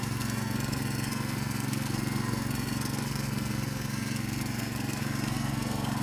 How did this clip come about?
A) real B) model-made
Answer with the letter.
B